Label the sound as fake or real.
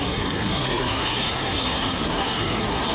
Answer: fake